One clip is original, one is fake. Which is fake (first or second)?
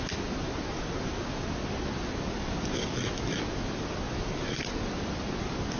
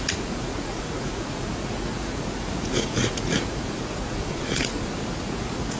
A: second